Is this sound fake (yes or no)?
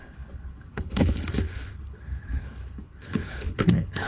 yes